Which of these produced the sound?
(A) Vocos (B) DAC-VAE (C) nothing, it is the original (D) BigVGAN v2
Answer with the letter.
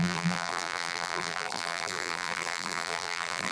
D